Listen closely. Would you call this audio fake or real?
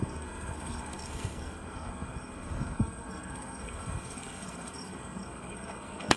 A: fake